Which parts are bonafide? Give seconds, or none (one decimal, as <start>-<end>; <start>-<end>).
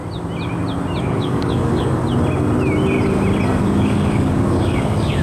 0.0-1.0; 2.0-3.6